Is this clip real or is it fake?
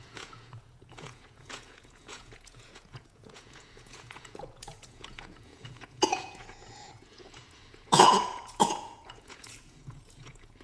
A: fake